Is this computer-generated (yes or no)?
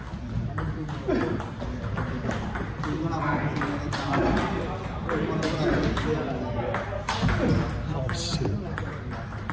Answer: no